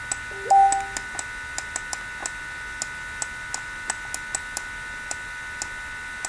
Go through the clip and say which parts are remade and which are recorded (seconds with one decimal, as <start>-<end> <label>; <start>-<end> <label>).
0.0-6.3 recorded